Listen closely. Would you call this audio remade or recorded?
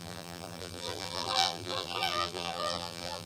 remade